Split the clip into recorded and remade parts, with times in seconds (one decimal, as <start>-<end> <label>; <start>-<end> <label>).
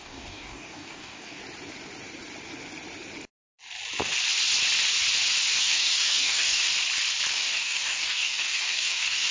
0.0-1.4 remade; 1.4-5.6 recorded; 5.6-6.7 remade; 6.7-7.3 recorded; 7.3-9.3 remade